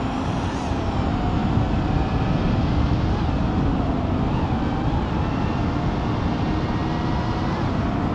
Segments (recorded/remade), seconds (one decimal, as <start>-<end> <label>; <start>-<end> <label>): 0.0-8.1 recorded